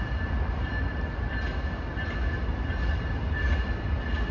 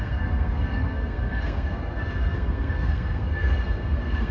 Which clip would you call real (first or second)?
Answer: first